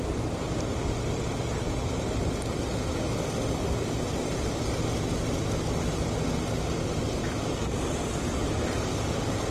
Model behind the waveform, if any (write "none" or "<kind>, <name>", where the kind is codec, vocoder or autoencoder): none